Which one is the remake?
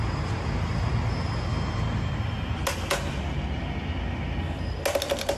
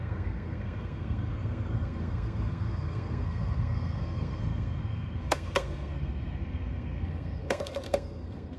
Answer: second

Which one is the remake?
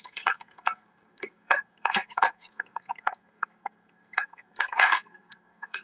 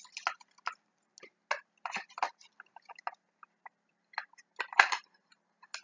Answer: first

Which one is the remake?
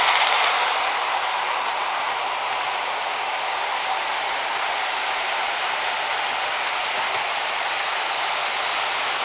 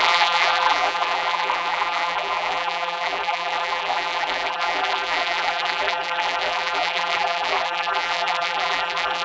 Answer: second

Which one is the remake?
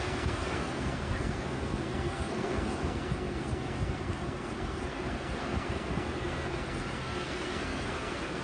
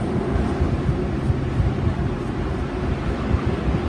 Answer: first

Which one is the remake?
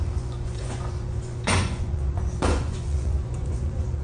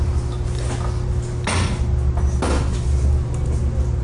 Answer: first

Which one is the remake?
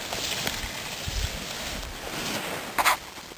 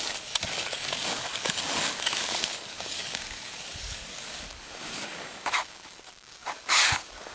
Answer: second